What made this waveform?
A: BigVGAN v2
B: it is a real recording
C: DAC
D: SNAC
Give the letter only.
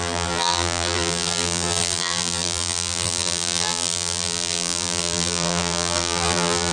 A